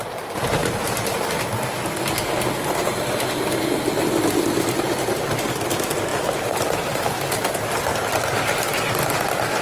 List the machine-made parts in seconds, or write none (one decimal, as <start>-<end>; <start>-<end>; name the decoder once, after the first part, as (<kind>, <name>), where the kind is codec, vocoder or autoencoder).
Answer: 0.6-1.8 (vocoder, BigVGAN v2); 6.1-7.2